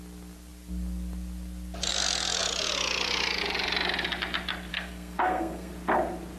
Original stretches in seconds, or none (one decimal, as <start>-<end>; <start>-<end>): 0.0-4.7; 5.7-6.4